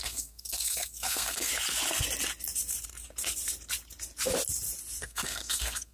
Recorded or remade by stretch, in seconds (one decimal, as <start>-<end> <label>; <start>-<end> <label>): 0.0-1.5 remade; 1.5-5.0 recorded; 5.0-5.9 remade